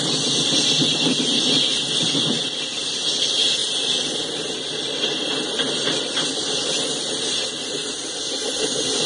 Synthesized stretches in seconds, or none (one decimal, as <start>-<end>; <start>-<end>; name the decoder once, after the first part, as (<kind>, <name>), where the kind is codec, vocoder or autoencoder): none